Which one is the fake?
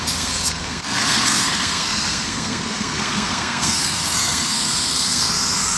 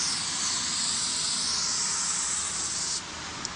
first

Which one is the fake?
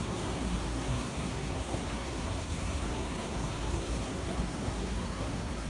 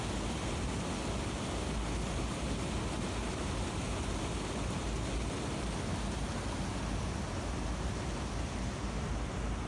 first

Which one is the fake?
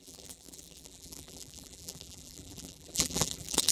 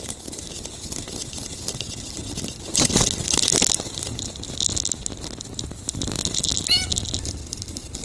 first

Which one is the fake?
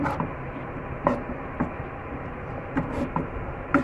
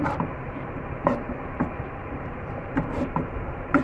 second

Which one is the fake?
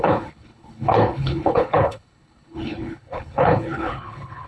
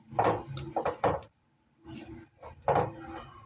first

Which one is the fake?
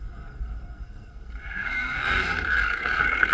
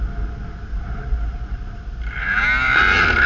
first